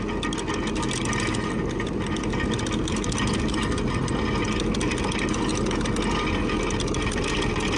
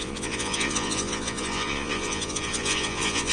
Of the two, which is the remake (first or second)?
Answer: second